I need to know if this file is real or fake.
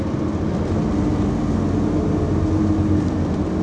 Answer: real